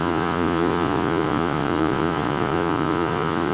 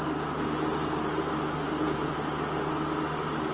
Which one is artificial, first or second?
first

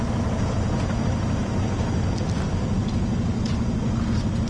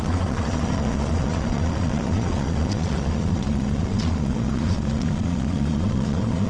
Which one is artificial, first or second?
second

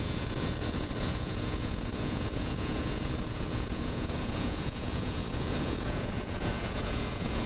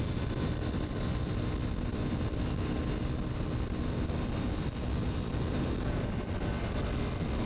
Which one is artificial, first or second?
first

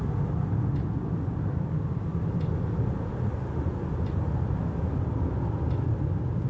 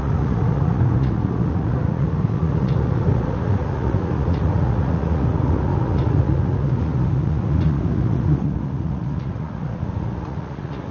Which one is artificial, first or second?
second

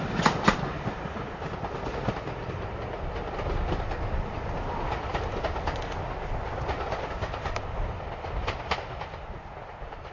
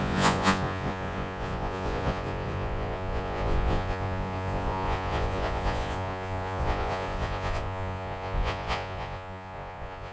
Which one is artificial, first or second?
second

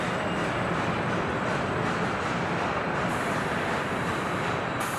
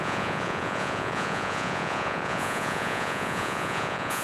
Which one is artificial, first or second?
second